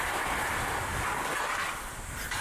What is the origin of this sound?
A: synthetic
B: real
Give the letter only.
B